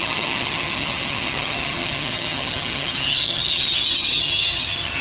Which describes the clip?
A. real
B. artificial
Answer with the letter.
B